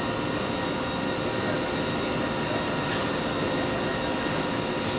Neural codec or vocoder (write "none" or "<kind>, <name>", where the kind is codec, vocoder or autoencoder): none